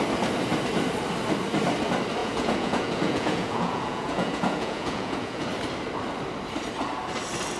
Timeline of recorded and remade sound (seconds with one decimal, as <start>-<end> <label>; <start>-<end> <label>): 0.0-2.2 recorded; 2.2-5.5 remade; 5.5-7.6 recorded